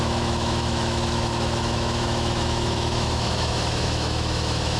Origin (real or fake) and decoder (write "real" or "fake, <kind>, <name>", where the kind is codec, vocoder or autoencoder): fake, autoencoder, DAC-VAE